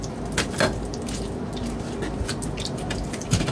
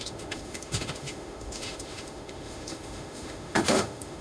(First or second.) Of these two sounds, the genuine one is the first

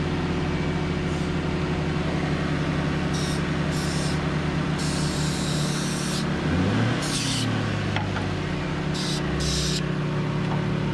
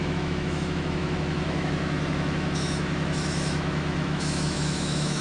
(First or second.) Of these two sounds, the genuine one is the first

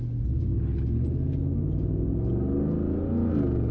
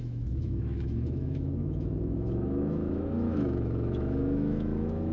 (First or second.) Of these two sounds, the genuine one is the first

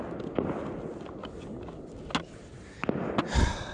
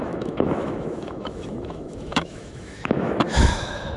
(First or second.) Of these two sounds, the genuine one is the first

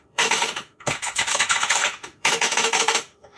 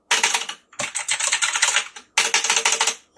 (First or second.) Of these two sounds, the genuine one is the second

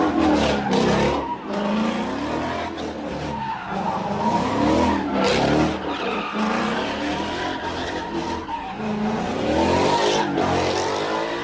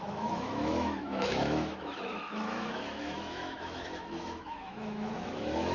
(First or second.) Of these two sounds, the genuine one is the first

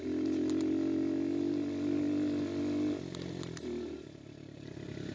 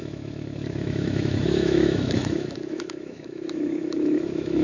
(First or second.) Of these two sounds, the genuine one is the first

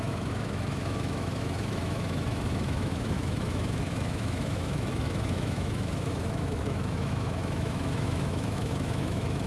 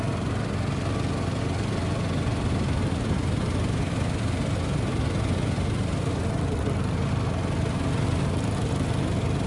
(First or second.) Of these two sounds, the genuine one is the second